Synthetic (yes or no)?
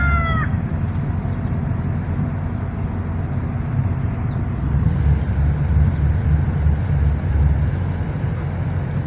no